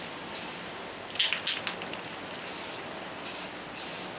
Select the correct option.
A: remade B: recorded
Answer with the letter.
B